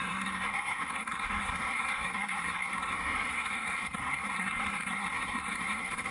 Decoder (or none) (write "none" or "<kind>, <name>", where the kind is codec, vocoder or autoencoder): codec, SNAC